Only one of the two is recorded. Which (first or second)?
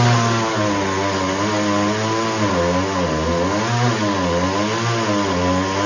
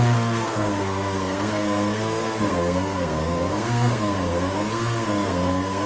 first